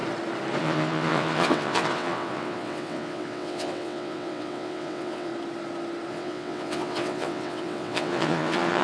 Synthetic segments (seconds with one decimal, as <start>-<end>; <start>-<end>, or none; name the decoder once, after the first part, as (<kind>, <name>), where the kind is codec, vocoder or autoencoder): 0.6-5.3 (vocoder, WaveNeXt); 6.1-8.8